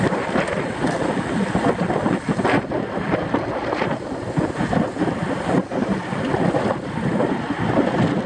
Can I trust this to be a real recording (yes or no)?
yes